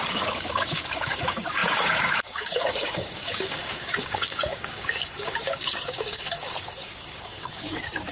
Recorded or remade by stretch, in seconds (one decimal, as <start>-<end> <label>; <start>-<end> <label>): 0.0-8.1 remade